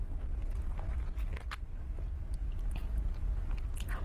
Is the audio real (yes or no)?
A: yes